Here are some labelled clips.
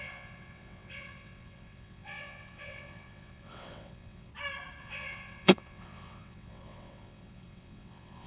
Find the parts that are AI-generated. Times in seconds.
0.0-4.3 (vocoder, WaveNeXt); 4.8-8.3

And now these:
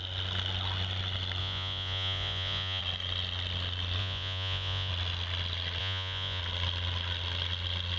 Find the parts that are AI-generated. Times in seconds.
1.4-2.8 (vocoder, Vocos); 4.0-4.9; 5.8-6.4

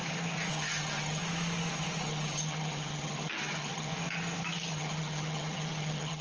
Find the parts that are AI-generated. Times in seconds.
0.5-1.2 (vocoder, HiFi-GAN); 2.0-3.9; 4.7-6.2

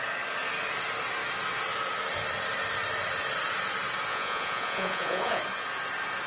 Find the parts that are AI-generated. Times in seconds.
4.1-5.4 (vocoder, Vocos)

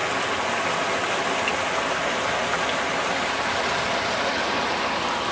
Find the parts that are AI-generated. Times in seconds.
none

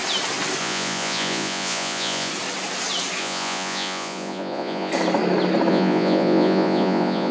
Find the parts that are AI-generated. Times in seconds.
0.6-2.3 (vocoder, Vocos); 3.2-4.9; 5.7-7.3

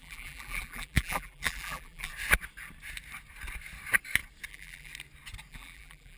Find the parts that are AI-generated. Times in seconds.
0.0-2.1 (vocoder, BigVGAN v2); 4.5-4.9; 5.5-6.2

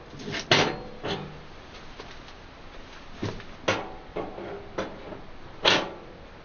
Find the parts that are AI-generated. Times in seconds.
none